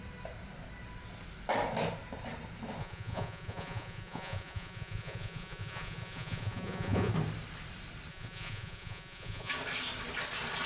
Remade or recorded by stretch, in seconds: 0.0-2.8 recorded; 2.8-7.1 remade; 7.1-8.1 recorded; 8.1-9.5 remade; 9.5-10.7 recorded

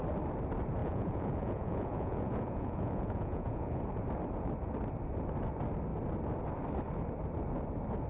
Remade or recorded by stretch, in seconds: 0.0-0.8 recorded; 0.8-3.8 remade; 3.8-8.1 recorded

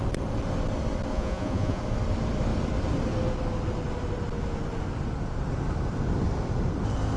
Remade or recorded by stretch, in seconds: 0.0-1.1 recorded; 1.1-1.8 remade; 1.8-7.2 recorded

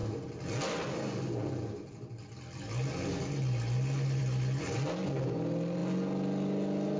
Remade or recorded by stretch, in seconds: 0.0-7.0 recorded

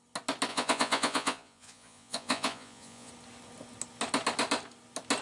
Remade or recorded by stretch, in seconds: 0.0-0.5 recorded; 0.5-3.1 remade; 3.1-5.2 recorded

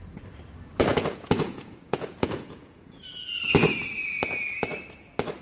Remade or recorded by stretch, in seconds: 0.0-0.9 recorded; 0.9-3.3 remade; 3.3-5.4 recorded

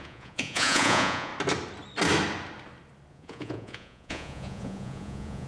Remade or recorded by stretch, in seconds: 0.0-1.3 remade; 1.3-3.1 recorded; 3.1-5.5 remade